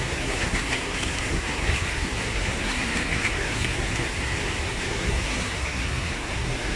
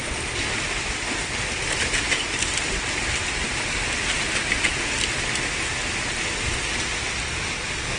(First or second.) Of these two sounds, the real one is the second